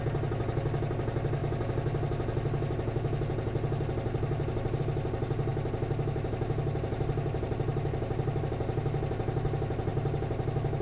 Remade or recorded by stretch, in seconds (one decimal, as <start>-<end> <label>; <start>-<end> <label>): 0.0-10.8 recorded

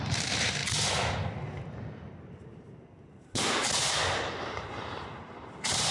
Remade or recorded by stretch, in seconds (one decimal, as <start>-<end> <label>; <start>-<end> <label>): 0.0-0.6 remade; 0.6-2.6 recorded; 2.6-3.6 remade; 3.6-4.4 recorded; 4.4-5.9 remade

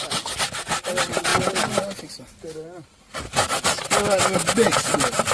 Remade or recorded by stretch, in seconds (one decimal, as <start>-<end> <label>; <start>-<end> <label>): 0.0-5.3 recorded

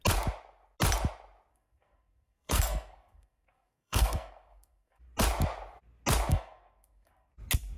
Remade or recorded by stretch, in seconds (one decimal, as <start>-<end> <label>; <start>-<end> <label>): 0.0-1.5 recorded; 1.5-5.0 remade; 5.0-6.3 recorded; 6.3-7.3 remade; 7.3-7.8 recorded

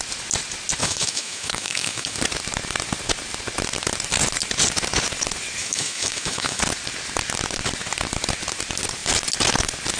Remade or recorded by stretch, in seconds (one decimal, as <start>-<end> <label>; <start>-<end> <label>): 0.0-0.8 recorded; 0.8-2.2 remade; 2.2-5.6 recorded; 5.6-6.6 remade; 6.6-10.0 recorded